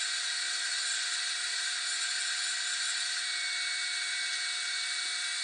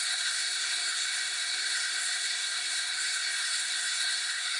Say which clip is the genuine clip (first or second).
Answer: first